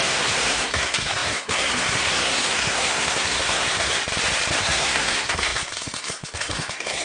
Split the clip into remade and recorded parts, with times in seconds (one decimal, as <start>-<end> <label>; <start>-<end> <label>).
0.0-4.0 remade; 4.0-4.6 recorded; 4.6-7.0 remade